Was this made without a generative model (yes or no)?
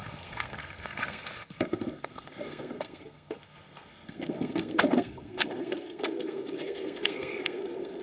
no